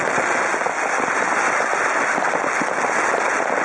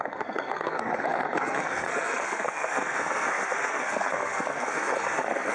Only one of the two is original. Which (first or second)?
first